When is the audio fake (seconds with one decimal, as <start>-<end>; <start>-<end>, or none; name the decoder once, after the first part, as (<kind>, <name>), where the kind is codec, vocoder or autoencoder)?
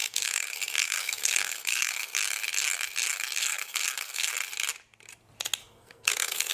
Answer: 0.0-2.2 (codec, SNAC); 3.4-4.3; 5.6-6.5